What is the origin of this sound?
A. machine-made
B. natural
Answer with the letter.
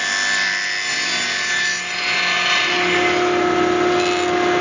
B